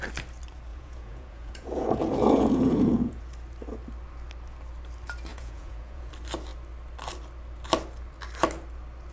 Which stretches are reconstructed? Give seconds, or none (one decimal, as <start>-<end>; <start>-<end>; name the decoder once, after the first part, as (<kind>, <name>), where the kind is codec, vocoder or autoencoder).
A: 0.7-3.2 (vocoder, Vocos); 5.3-6.1